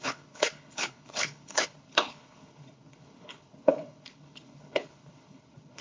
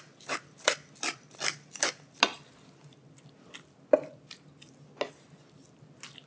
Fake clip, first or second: first